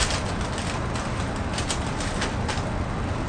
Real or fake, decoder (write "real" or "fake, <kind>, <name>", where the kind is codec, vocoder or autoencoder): real